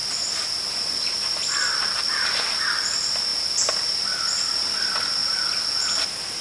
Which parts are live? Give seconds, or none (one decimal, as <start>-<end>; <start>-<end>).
0.0-6.4